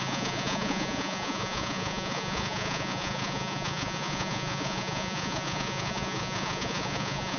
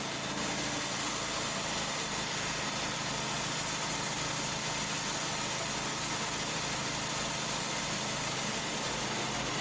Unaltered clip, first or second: second